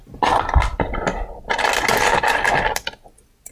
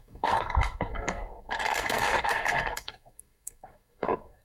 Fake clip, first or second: second